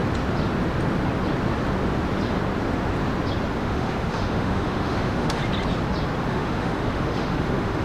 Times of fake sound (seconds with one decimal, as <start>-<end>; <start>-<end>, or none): 3.6-5.4; 6.3-7.8